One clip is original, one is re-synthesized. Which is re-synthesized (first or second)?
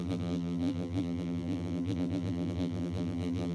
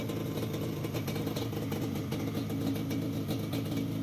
first